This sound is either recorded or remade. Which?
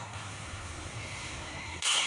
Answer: remade